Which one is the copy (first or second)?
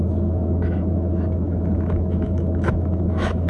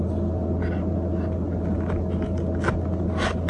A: first